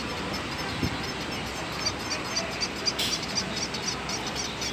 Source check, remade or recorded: recorded